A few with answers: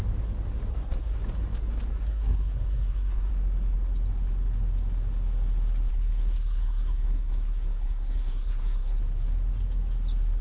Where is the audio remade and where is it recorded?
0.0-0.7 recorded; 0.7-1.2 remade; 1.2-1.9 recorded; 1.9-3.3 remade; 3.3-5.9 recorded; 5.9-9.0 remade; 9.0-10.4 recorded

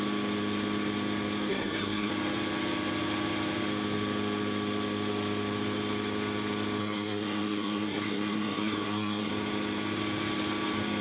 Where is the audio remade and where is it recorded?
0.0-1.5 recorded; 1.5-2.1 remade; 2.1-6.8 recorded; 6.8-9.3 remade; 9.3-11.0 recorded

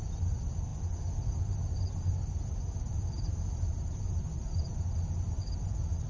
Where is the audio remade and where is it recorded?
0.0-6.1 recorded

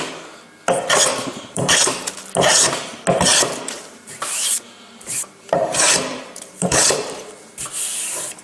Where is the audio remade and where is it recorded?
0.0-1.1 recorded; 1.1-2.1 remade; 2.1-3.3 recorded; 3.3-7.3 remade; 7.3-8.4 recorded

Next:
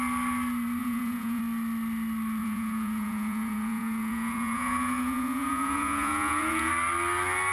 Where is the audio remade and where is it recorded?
0.0-0.8 recorded; 0.8-1.4 remade; 1.4-2.4 recorded; 2.4-6.7 remade; 6.7-7.5 recorded

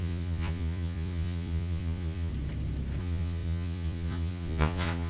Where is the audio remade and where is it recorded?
0.0-2.3 remade; 2.3-3.0 recorded; 3.0-5.1 remade

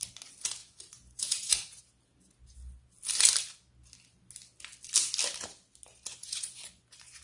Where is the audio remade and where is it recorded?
0.0-0.6 recorded; 0.6-1.8 remade; 1.8-6.1 recorded; 6.1-7.2 remade

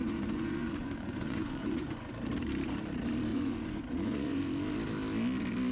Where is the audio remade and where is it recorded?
0.0-2.1 remade; 2.1-3.3 recorded; 3.3-4.4 remade; 4.4-5.7 recorded